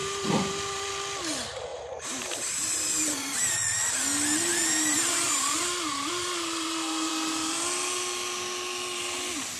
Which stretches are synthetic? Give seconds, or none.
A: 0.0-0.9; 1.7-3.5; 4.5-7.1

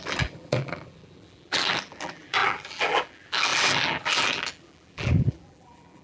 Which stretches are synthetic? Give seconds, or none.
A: 0.0-6.0